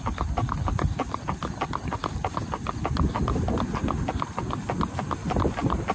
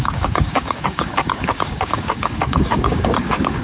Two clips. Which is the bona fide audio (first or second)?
first